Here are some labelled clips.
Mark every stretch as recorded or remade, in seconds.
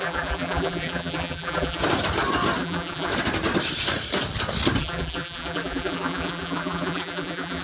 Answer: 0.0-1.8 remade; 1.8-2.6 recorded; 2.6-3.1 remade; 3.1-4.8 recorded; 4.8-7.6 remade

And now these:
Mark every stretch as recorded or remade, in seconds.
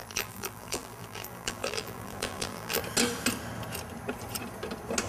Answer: 0.0-2.8 remade; 2.8-5.1 recorded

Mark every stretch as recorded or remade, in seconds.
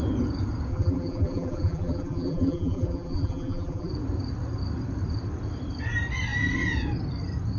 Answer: 0.0-0.7 recorded; 0.7-3.9 remade; 3.9-7.6 recorded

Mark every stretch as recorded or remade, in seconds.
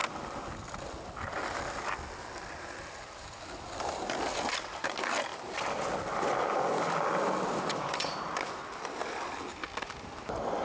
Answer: 0.0-10.6 recorded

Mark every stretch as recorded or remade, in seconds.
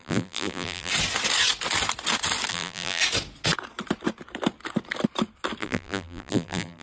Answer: 0.0-0.9 remade; 0.9-2.5 recorded; 2.5-3.0 remade; 3.0-5.6 recorded; 5.6-6.8 remade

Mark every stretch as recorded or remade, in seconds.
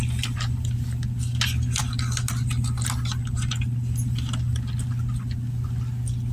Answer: 0.0-6.3 recorded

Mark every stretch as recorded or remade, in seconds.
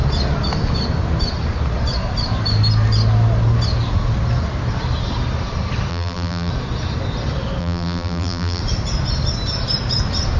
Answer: 0.0-5.9 recorded; 5.9-6.5 remade; 6.5-7.6 recorded; 7.6-8.6 remade; 8.6-10.4 recorded